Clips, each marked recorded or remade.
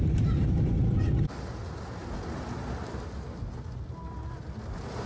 recorded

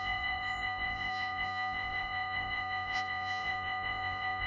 remade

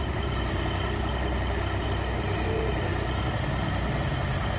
recorded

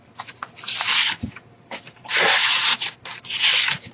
recorded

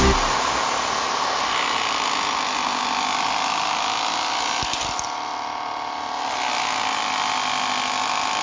recorded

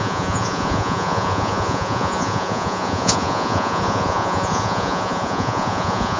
remade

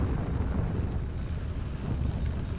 recorded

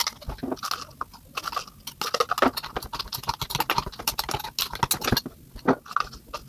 recorded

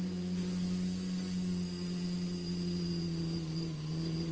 recorded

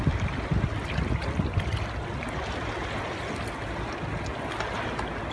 recorded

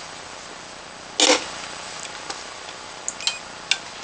recorded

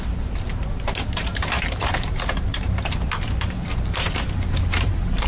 remade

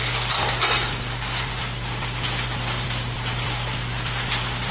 recorded